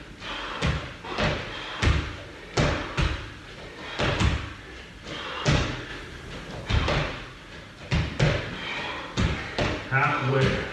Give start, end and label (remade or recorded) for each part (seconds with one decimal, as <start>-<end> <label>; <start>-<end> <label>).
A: 0.0-10.7 recorded